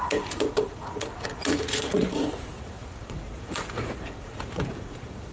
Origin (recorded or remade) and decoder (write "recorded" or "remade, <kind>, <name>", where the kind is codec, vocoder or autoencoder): remade, vocoder, Vocos